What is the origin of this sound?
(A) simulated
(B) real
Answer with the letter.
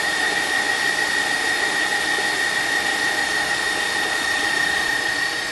B